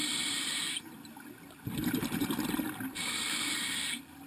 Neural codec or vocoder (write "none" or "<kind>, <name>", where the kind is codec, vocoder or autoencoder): none